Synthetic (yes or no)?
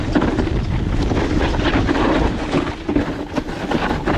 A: no